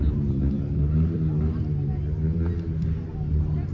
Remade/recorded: recorded